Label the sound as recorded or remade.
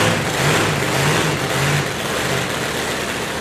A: recorded